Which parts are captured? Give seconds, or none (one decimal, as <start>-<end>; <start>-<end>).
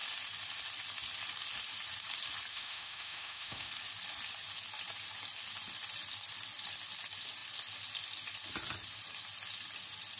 0.0-2.5; 3.7-10.2